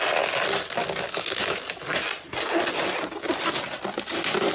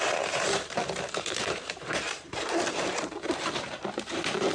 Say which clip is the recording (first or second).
first